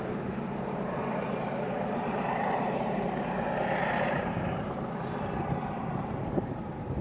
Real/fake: fake